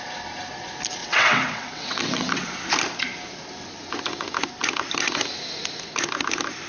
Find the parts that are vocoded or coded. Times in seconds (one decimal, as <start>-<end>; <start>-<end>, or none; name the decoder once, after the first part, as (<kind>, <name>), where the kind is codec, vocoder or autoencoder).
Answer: 1.0-2.5 (vocoder, WaveNeXt)